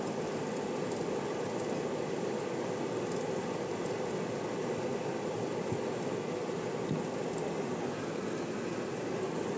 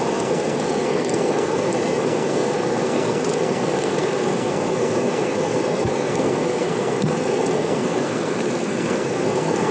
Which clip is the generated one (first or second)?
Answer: second